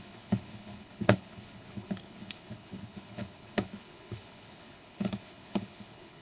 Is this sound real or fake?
fake